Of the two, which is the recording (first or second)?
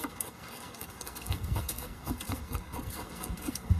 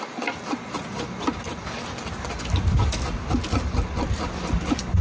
second